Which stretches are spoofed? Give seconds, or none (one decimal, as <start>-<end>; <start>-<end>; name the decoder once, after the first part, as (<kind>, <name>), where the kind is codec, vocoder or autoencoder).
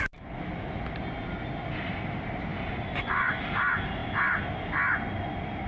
none